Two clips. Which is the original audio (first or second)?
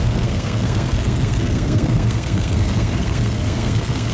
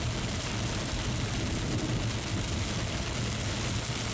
second